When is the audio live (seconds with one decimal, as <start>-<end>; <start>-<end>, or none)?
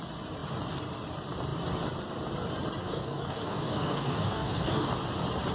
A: 0.0-2.8; 4.9-5.5